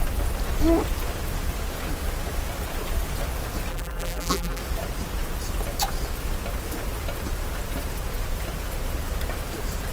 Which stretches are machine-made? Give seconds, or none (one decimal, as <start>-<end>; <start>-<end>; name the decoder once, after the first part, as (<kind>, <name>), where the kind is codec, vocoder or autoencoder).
3.7-4.6 (vocoder, BigVGAN v2)